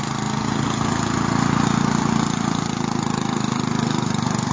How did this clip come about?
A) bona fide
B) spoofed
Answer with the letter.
A